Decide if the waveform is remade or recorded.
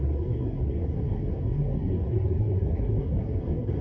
remade